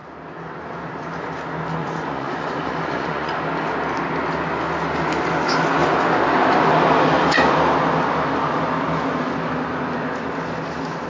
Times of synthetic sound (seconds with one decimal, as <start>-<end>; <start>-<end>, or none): 1.8-3.3